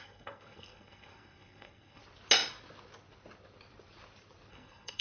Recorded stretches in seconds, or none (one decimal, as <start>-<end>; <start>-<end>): 2.0-4.5